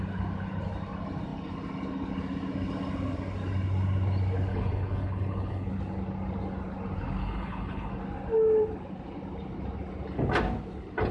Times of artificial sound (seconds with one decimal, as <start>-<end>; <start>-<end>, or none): 4.5-5.7; 7.2-7.9